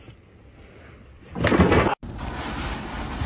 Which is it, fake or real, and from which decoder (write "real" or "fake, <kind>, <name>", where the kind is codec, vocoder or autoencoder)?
real